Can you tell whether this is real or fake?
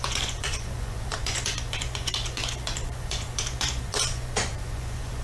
fake